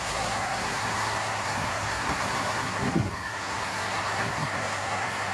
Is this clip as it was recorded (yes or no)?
no